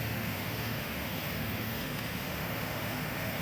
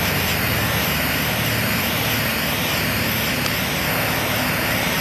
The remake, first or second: first